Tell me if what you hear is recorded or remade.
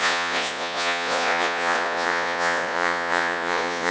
remade